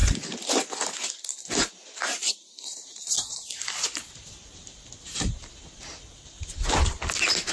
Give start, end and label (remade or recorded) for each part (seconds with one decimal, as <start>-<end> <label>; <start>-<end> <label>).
0.0-2.7 recorded; 2.7-5.7 remade; 5.7-7.5 recorded